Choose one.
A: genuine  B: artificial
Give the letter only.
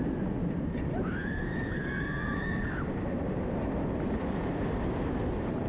B